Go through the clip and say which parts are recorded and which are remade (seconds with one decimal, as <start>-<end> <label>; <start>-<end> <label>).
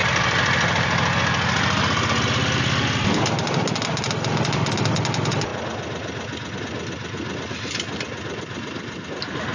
0.0-9.5 recorded